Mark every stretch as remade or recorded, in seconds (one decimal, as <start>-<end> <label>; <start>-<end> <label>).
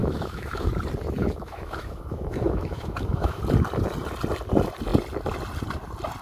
0.0-0.7 remade; 0.7-1.2 recorded; 1.2-3.4 remade; 3.4-6.2 recorded